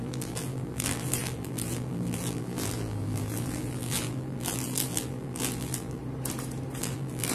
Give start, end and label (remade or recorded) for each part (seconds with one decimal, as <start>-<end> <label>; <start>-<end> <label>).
0.0-6.0 remade; 6.0-6.8 recorded; 6.8-7.3 remade